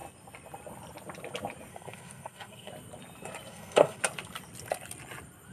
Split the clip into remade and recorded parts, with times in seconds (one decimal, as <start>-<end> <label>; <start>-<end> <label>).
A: 0.0-1.7 recorded; 1.7-2.7 remade; 2.7-3.5 recorded; 3.5-4.0 remade; 4.0-5.5 recorded